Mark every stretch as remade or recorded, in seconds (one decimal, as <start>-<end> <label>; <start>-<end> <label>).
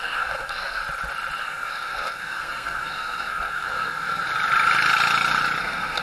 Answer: 0.0-0.8 remade; 0.8-1.4 recorded; 1.4-4.2 remade; 4.2-5.6 recorded; 5.6-6.0 remade